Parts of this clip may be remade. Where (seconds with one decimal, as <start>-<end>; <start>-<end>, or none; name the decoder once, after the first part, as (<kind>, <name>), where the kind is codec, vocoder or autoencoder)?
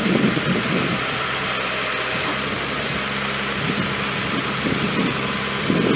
none